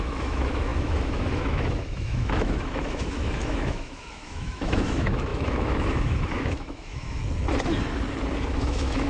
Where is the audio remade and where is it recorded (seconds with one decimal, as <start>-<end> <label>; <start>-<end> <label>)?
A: 0.0-7.2 remade; 7.2-8.5 recorded; 8.5-9.1 remade